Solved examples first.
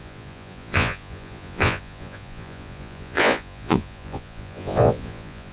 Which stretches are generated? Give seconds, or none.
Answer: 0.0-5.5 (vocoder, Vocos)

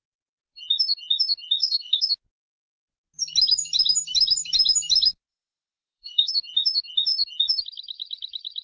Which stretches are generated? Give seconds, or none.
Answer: 1.6-2.1 (codec, SNAC); 5.3-6.3

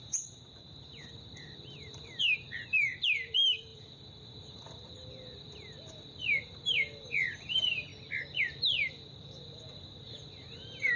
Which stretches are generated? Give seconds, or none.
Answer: 0.0-7.9 (vocoder, BigVGAN v2); 8.9-11.0